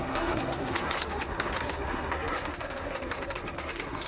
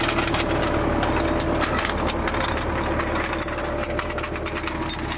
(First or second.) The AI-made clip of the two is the first